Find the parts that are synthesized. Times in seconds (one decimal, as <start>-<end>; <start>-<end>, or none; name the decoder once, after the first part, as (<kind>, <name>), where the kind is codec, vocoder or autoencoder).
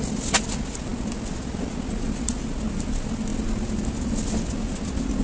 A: none